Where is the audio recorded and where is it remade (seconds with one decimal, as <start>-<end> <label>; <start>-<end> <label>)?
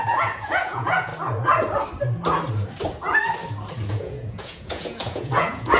0.0-1.1 remade; 1.1-3.9 recorded; 3.9-5.8 remade